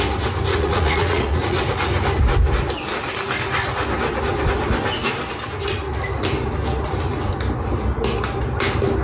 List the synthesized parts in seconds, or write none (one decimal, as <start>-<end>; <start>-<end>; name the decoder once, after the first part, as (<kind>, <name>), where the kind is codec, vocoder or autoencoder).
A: 0.5-1.6 (vocoder, Vocos)